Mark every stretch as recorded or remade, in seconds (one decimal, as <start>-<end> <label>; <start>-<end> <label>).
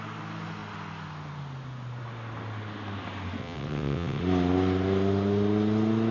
0.0-3.4 recorded; 3.4-4.2 remade; 4.2-6.1 recorded